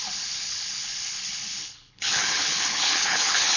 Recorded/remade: remade